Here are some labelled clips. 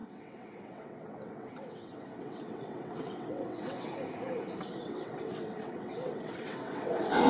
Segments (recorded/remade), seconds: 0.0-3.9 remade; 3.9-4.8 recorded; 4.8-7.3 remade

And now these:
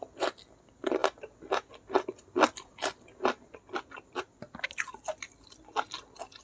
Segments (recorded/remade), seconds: 0.0-6.4 recorded

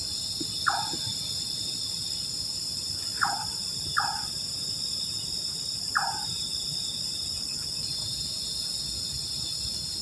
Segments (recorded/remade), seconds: 0.0-10.0 recorded

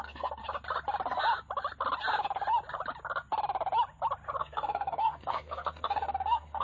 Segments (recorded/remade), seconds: 0.0-0.4 remade; 0.4-4.4 recorded; 4.4-6.6 remade

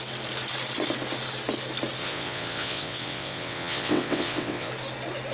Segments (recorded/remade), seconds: 0.0-2.0 recorded; 2.0-4.7 remade; 4.7-5.3 recorded

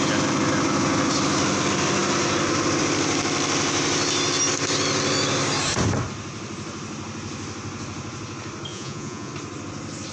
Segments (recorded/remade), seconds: 0.0-8.7 recorded; 8.7-9.3 remade; 9.3-10.1 recorded

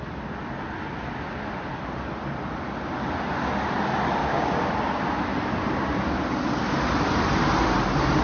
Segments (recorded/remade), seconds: 0.0-4.2 recorded; 4.2-4.7 remade; 4.7-8.2 recorded

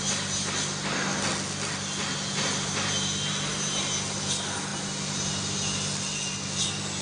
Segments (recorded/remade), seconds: 0.0-7.0 recorded